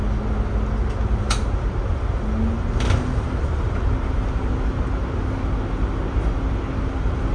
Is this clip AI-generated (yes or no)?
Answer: no